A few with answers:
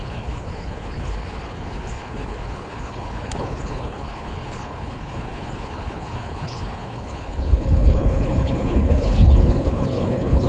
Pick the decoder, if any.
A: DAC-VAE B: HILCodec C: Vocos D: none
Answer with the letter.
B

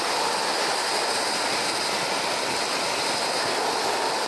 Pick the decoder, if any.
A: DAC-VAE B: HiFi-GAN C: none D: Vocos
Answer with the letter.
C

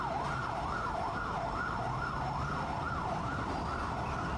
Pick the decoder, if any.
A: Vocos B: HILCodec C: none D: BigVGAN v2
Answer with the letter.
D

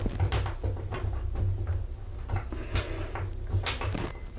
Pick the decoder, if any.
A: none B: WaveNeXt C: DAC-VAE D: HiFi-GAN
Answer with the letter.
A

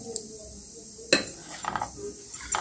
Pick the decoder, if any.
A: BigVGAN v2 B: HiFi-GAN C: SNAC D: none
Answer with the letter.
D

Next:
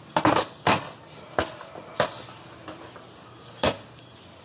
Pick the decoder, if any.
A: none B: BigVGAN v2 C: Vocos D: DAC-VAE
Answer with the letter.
A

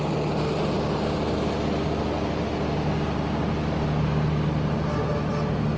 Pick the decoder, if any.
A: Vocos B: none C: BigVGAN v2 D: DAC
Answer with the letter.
B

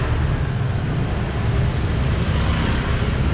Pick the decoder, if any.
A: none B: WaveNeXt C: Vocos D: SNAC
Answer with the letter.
A